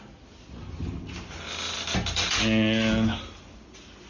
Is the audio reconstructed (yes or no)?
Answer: no